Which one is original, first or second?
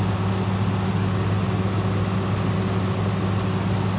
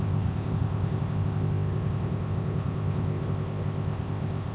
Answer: first